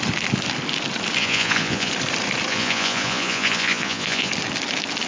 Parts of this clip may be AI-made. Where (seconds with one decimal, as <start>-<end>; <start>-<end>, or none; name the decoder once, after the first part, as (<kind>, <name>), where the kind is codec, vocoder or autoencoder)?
1.2-1.9 (vocoder, Vocos); 2.5-4.3